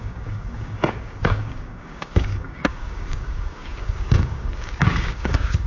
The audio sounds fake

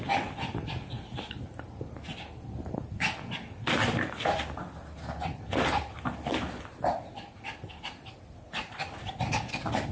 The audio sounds real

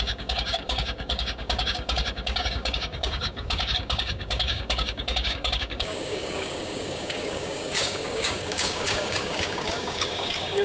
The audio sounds fake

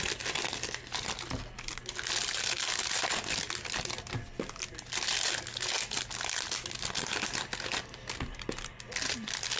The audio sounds real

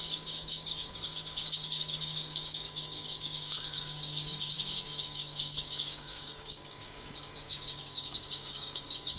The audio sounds fake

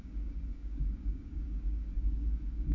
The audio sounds fake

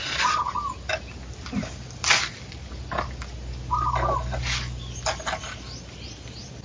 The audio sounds real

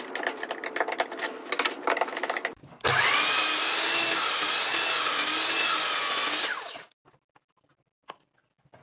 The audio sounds real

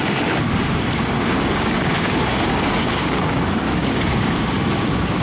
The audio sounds fake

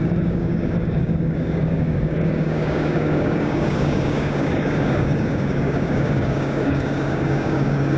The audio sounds fake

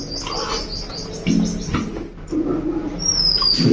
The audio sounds real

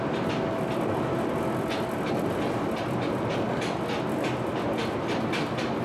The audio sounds real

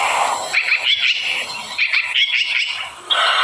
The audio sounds real